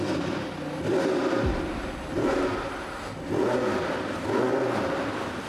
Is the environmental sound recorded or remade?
recorded